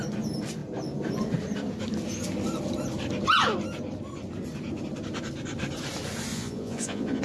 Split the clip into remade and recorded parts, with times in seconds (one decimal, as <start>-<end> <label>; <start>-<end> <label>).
0.0-6.3 recorded; 6.3-7.2 remade